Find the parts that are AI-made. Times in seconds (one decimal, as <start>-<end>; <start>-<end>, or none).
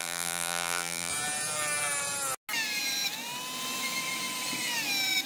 0.0-1.1